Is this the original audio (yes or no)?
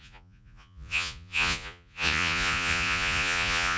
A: no